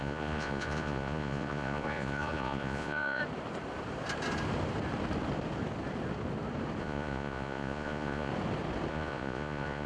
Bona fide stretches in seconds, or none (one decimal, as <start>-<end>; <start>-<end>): 3.2-6.8; 8.3-8.9